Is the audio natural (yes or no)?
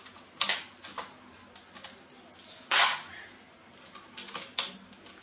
yes